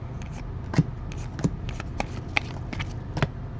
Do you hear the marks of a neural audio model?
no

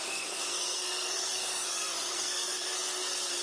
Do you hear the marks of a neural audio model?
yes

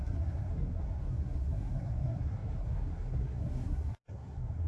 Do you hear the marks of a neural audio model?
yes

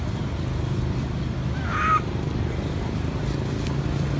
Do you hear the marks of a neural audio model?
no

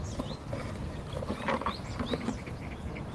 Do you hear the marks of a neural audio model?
no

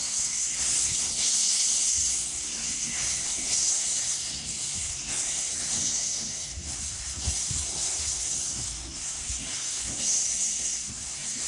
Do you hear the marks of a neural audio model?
yes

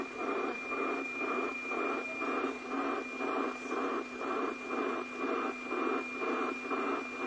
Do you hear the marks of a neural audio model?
no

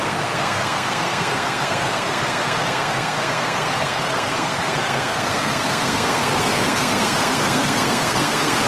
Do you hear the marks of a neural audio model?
yes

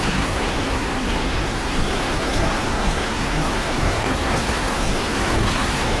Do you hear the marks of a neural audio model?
yes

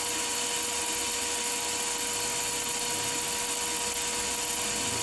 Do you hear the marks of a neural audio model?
no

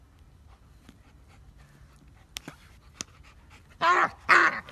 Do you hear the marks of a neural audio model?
no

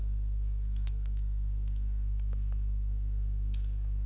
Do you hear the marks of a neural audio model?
yes